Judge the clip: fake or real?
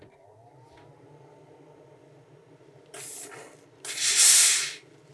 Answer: real